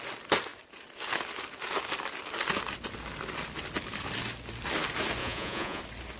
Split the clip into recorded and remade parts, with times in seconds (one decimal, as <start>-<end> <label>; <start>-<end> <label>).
0.0-5.2 recorded; 5.2-5.8 remade; 5.8-6.2 recorded